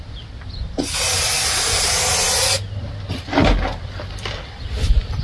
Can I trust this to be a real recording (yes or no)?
yes